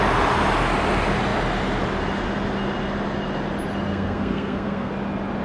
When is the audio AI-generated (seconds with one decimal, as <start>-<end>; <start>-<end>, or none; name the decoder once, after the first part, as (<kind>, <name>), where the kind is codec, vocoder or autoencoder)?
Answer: 3.9-4.9 (codec, SNAC)